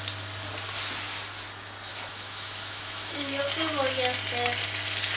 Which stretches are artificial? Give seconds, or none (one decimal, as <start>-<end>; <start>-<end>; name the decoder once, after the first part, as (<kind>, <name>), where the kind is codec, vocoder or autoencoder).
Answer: 1.9-3.4 (autoencoder, DAC-VAE)